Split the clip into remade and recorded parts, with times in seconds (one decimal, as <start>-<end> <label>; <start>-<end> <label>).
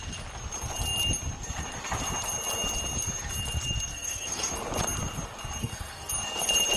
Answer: 0.0-3.9 recorded; 3.9-4.5 remade; 4.5-5.6 recorded; 5.6-6.1 remade; 6.1-6.8 recorded